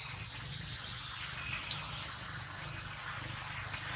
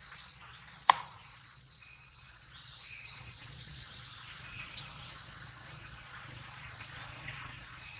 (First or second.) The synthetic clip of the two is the second